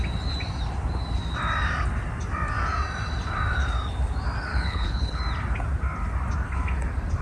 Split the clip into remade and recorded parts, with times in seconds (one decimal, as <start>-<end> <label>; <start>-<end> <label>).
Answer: 0.0-4.5 recorded; 4.5-5.2 remade; 5.2-7.2 recorded